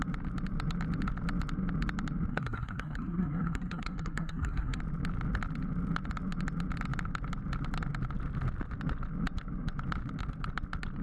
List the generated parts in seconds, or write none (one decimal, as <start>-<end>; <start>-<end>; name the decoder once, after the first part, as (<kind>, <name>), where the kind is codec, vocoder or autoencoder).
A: 2.3-4.8 (codec, SNAC)